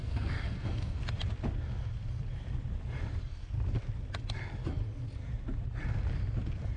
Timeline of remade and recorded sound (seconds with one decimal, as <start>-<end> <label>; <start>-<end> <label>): 0.0-1.0 remade; 1.0-6.8 recorded